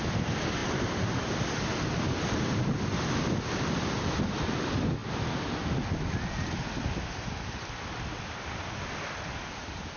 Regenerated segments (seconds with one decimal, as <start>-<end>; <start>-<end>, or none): none